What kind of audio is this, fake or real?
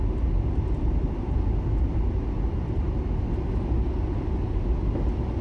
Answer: real